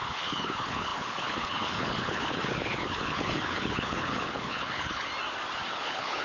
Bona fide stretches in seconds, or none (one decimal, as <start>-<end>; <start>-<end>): 5.1-5.7